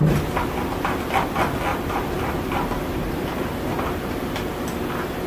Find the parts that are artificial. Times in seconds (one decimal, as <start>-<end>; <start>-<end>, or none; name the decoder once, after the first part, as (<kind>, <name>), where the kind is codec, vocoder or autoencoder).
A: 1.7-4.1 (vocoder, BigVGAN v2)